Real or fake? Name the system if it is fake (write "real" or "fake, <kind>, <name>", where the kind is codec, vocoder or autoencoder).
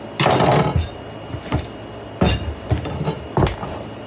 real